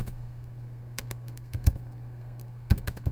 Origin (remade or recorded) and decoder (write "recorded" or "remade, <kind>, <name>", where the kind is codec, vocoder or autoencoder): remade, codec, SNAC